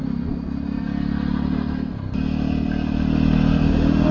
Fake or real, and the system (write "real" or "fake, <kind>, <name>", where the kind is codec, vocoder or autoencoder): real